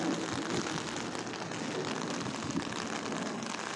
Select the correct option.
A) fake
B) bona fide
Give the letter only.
B